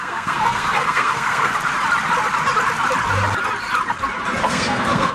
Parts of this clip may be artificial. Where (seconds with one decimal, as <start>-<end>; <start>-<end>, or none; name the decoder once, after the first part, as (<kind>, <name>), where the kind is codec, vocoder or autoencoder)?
0.0-1.5 (codec, SNAC); 4.4-5.1

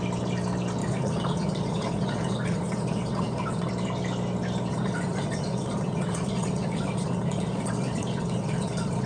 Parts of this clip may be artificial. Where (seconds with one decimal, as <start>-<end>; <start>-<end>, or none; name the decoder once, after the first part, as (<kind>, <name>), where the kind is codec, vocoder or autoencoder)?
0.8-3.7 (vocoder, Vocos); 4.7-9.1

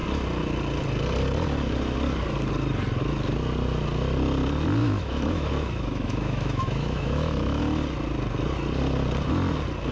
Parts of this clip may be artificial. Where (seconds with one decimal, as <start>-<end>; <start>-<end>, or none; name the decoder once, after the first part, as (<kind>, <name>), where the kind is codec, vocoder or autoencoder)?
4.8-7.6 (autoencoder, DAC-VAE)

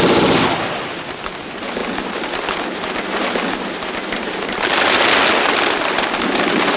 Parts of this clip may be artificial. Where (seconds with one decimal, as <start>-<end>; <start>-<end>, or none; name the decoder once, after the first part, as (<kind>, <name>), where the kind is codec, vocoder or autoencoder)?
none

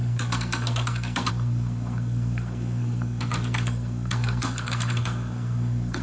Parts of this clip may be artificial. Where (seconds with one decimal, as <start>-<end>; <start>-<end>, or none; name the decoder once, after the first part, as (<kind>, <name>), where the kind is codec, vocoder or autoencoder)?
0.0-6.0 (codec, SNAC)

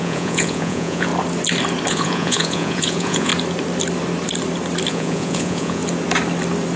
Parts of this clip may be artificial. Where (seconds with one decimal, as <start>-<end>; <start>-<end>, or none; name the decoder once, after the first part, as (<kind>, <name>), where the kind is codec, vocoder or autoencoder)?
0.0-1.1 (vocoder, Vocos); 1.9-3.3; 4.9-5.8

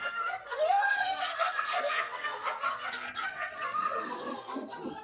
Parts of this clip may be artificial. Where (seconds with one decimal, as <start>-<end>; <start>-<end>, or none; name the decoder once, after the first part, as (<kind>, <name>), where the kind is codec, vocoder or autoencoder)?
0.0-5.0 (codec, SNAC)

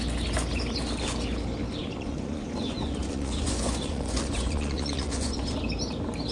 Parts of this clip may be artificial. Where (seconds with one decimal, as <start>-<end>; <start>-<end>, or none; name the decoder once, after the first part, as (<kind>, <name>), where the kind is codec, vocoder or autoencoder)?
1.8-5.6 (vocoder, Vocos)